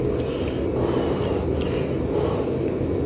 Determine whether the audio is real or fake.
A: real